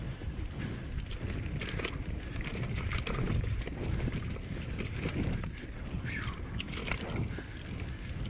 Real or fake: real